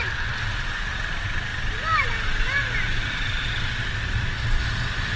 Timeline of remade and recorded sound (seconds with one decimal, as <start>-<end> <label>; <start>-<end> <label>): 0.0-5.2 recorded